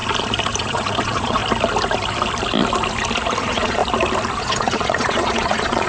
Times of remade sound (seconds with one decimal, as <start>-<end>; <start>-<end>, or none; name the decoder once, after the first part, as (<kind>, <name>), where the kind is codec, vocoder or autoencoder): 0.7-1.4 (vocoder, Vocos); 3.4-3.8; 4.4-5.9